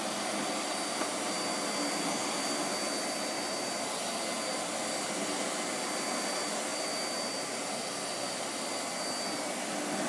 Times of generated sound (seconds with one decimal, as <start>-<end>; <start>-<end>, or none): none